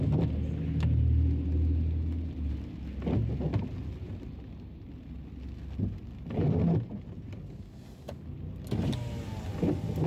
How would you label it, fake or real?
real